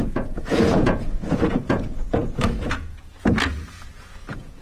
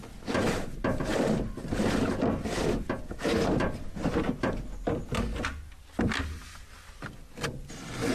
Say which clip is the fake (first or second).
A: first